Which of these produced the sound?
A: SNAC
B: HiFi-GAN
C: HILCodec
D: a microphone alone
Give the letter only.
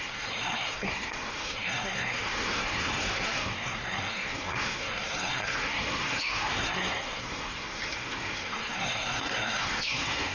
A